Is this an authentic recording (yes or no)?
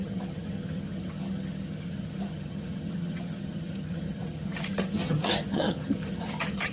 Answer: no